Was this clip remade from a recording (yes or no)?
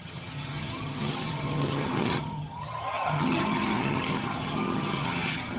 yes